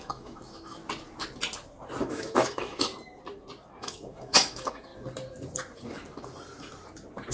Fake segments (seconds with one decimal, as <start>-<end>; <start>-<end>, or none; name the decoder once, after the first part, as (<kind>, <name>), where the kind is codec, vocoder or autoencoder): 0.0-0.8 (autoencoder, DAC-VAE); 2.0-2.9; 3.8-4.9